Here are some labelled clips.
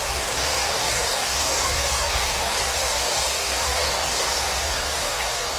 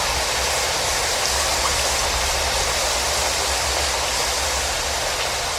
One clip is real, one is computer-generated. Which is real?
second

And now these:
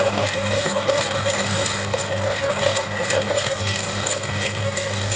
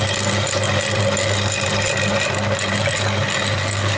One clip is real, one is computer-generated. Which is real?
second